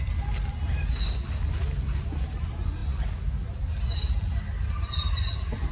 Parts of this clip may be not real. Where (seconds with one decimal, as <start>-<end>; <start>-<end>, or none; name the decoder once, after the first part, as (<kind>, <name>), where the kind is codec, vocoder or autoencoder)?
none

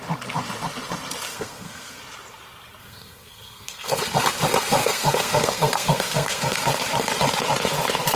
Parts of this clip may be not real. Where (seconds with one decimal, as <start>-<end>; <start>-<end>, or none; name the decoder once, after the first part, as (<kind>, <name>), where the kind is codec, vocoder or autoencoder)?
1.3-2.0 (codec, SNAC); 2.8-4.0; 4.8-6.6

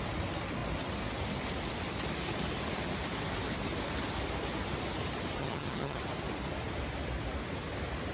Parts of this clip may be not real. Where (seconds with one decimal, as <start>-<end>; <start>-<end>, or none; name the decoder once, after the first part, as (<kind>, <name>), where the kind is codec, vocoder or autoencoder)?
5.4-6.0 (vocoder, HiFi-GAN)

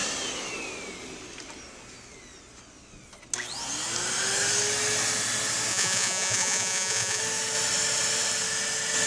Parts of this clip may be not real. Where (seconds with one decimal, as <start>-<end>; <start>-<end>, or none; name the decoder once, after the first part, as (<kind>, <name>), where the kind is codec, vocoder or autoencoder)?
5.7-7.2 (vocoder, Vocos)

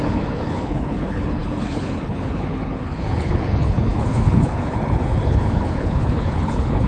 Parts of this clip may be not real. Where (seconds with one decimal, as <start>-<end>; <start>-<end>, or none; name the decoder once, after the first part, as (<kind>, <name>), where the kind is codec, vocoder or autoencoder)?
0.0-6.9 (codec, HILCodec)

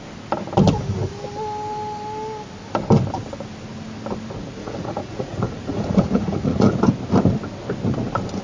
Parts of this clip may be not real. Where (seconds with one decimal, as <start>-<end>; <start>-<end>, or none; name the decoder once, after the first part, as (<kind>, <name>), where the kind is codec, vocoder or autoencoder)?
4.6-6.8 (vocoder, Vocos)

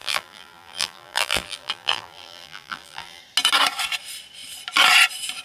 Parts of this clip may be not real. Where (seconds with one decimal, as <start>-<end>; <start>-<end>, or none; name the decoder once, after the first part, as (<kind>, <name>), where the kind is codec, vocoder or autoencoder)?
0.0-3.2 (vocoder, BigVGAN v2)

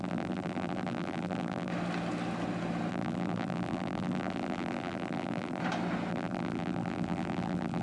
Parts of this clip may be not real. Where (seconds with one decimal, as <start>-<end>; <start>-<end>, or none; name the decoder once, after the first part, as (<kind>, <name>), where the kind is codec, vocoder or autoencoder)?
0.0-1.7 (vocoder, BigVGAN v2); 2.9-5.6; 6.1-7.8